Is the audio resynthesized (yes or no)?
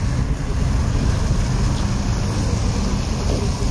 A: no